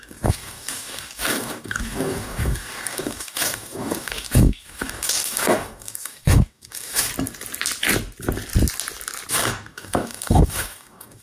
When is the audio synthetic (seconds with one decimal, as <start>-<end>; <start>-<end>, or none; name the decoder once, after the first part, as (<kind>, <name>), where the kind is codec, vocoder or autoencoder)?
0.0-7.1 (codec, DAC); 9.3-11.2

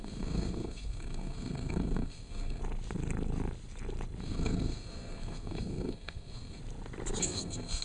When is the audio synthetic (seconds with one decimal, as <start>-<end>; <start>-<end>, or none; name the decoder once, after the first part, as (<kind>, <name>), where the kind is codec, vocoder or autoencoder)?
0.0-2.6 (codec, SNAC); 4.2-6.6; 7.2-7.8

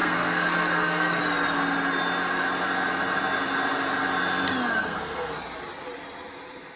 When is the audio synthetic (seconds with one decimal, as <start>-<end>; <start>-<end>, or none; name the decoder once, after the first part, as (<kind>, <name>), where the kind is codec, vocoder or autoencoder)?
0.0-1.2 (codec, SNAC); 4.8-5.3

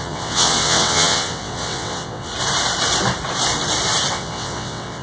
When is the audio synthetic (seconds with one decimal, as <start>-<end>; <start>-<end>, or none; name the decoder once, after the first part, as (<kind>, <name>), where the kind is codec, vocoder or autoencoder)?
0.0-2.3 (vocoder, WaveNeXt); 4.1-5.0

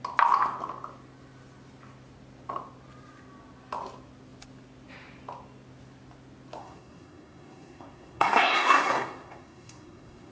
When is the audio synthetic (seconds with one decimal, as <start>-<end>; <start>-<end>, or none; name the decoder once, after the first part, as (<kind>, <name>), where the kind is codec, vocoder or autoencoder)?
6.6-10.3 (codec, SNAC)

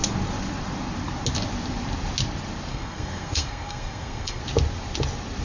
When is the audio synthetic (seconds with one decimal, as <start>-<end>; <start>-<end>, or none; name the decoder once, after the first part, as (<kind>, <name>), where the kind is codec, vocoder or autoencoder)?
2.7-4.4 (codec, SNAC)